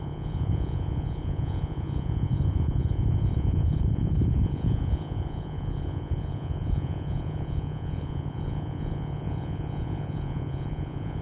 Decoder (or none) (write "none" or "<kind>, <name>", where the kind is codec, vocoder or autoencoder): vocoder, Vocos